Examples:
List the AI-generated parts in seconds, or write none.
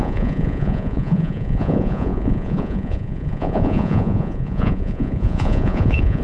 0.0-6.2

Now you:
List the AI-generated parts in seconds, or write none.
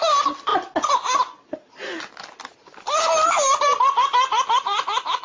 none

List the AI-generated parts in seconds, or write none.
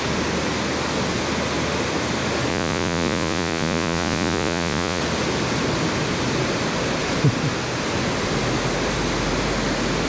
2.5-5.0